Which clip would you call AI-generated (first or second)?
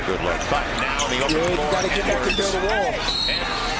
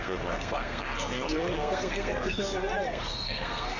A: second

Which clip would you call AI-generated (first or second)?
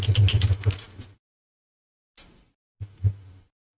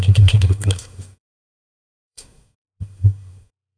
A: second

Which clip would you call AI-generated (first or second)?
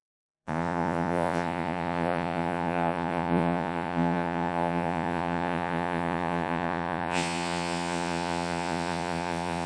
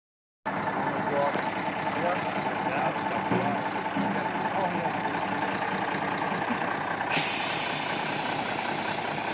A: first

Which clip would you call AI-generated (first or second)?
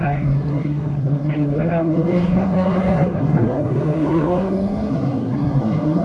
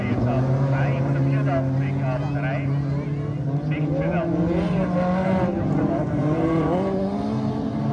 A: first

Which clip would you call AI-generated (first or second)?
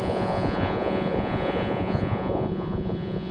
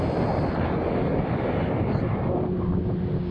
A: first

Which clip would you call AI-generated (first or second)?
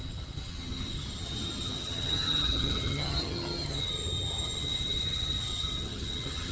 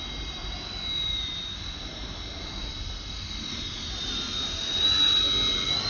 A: first